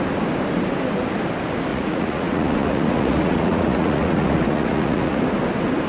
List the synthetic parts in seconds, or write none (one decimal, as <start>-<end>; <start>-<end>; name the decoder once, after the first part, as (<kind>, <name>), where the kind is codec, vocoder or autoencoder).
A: 1.7-5.2 (vocoder, Vocos)